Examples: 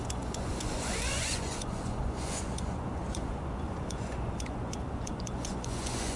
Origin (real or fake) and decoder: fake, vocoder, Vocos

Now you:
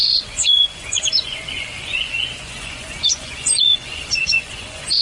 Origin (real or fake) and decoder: fake, vocoder, Vocos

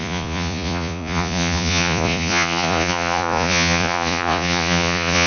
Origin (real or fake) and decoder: fake, vocoder, Vocos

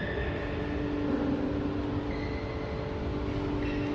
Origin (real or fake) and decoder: real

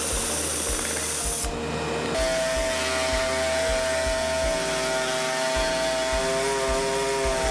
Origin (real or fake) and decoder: real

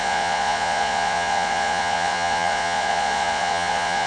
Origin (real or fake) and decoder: fake, vocoder, Vocos